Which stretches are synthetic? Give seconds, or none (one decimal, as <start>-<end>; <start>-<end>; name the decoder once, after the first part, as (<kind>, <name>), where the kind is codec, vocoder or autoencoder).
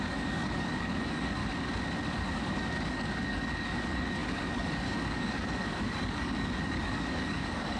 0.0-1.4 (codec, DAC); 2.1-7.8